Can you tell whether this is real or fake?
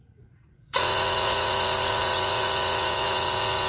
fake